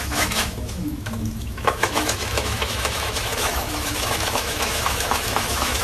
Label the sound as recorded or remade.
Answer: remade